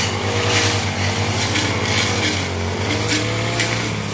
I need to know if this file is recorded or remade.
recorded